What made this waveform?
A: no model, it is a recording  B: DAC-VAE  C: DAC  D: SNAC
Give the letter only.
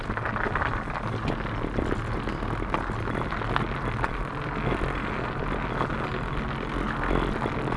A